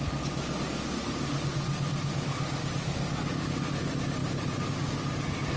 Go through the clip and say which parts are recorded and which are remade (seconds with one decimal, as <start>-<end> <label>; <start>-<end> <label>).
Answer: 0.0-5.6 recorded